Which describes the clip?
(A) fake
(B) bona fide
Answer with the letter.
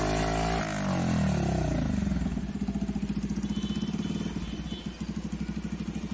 B